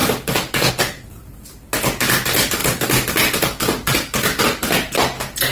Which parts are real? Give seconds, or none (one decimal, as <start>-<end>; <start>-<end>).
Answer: 0.7-2.6; 4.4-5.5